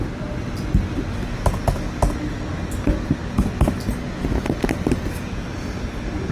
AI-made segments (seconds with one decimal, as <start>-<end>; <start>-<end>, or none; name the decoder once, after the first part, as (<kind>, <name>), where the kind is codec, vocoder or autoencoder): none